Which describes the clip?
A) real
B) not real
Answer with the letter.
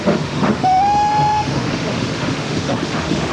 B